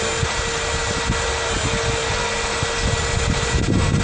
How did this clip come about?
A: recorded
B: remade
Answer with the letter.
A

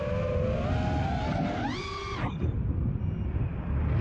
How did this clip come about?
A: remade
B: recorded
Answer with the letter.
B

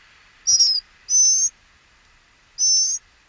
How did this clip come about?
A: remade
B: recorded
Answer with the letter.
B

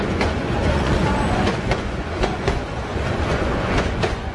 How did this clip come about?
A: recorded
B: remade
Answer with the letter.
B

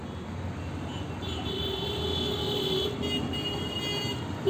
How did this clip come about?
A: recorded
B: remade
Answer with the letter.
A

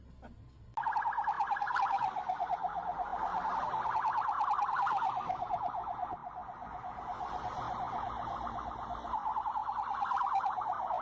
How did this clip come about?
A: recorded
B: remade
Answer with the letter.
A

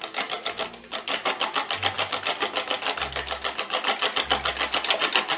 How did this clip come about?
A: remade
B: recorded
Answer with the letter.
B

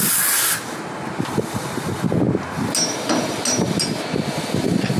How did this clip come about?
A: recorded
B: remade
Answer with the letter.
A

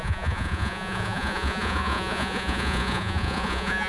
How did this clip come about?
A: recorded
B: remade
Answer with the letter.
B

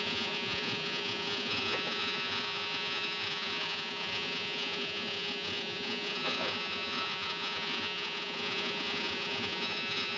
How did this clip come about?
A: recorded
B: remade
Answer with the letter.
B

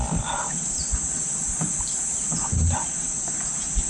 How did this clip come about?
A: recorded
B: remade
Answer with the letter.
A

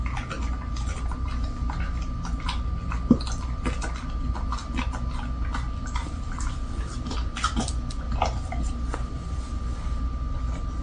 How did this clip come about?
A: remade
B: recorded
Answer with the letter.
B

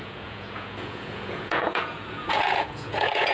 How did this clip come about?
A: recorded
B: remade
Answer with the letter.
B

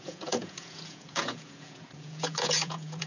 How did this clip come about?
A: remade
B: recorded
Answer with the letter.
A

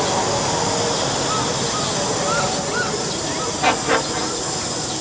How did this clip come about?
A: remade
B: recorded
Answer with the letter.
B